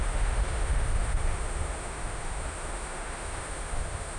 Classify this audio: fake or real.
fake